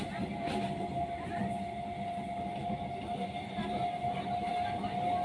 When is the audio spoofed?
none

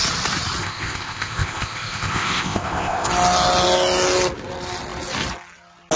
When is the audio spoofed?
0.6-3.1 (codec, ZipCodec)

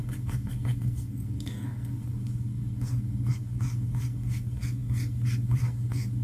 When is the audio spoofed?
0.0-6.2 (codec, SNAC)

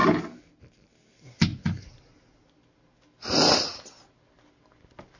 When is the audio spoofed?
none